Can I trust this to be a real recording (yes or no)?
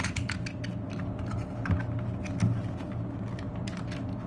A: yes